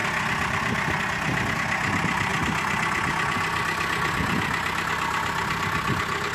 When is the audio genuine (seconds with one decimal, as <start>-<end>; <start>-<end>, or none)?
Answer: 0.0-6.3